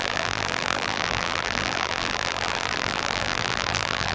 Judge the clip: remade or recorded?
remade